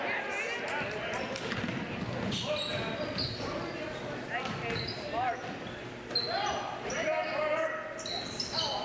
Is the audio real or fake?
real